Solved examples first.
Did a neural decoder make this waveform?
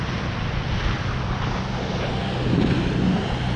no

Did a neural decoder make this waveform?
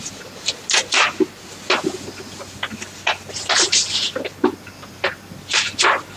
no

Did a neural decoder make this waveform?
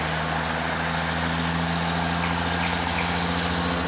no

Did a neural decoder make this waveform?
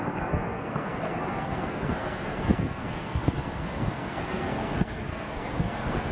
yes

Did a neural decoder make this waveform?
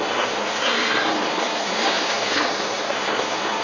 yes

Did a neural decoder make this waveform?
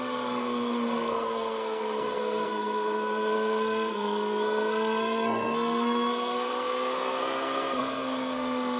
yes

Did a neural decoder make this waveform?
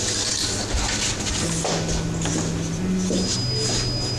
no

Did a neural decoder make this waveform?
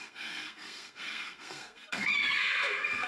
yes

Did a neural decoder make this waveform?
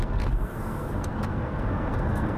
yes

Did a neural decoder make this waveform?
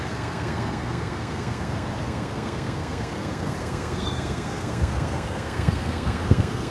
yes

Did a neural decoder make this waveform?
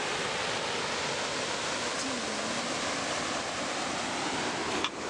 no